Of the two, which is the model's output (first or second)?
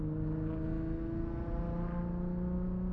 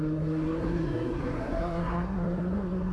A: second